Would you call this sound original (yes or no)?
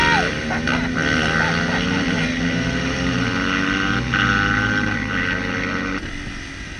yes